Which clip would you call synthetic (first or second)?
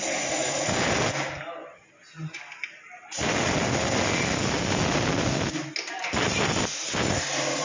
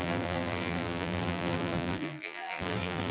second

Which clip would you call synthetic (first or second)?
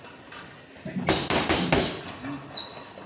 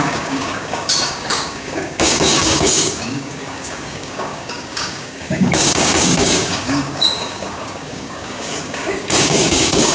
second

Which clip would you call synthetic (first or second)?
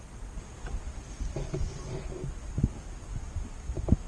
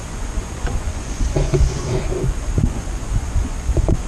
second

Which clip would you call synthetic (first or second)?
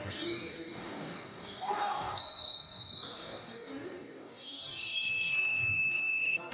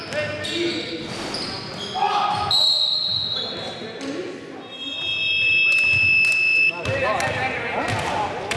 first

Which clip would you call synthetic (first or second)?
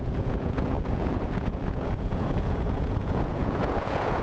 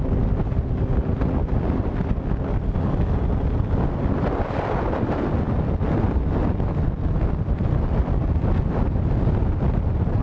first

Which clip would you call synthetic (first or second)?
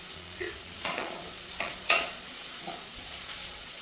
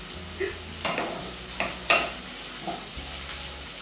first